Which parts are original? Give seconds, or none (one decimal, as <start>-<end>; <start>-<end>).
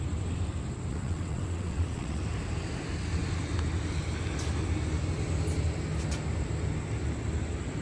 0.0-0.9; 2.2-7.8